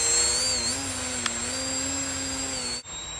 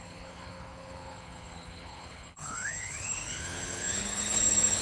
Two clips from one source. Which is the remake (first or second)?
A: second